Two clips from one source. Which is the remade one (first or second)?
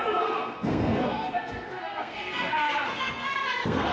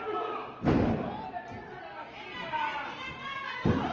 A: first